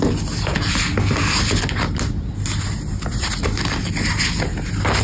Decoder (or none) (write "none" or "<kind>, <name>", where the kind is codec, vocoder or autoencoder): none